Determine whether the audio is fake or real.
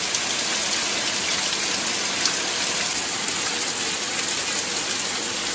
real